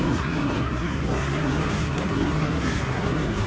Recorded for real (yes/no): no